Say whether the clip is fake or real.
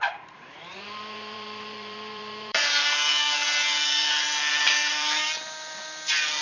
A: fake